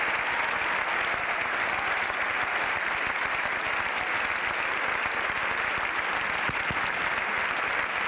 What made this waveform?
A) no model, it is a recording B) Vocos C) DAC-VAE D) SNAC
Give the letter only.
A